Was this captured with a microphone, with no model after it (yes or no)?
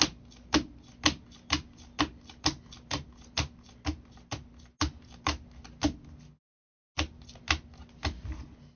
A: yes